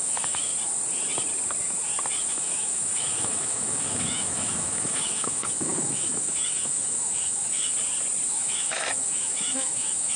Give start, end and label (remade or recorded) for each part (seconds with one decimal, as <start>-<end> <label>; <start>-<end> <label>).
0.0-0.5 remade; 0.5-2.2 recorded; 2.2-7.7 remade; 7.7-8.3 recorded; 8.3-10.2 remade

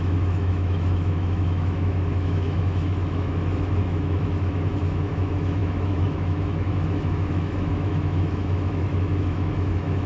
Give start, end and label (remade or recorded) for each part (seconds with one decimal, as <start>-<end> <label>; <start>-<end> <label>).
0.0-10.1 remade

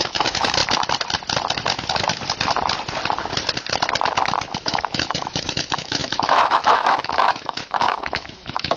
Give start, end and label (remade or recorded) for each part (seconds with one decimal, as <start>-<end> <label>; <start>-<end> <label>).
0.0-0.6 remade; 0.6-4.6 recorded; 4.6-8.8 remade